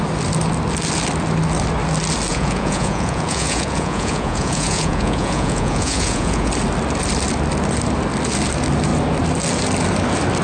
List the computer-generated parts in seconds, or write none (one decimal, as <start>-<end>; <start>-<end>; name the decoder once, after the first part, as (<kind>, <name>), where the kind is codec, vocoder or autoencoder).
2.3-6.5 (vocoder, Vocos)